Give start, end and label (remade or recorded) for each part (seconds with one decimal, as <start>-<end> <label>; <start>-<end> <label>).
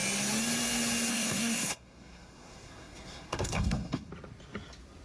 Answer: 0.0-1.1 recorded; 1.1-4.1 remade; 4.1-5.0 recorded